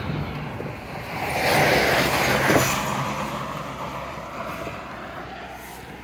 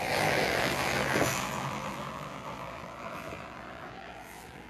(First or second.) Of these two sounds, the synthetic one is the second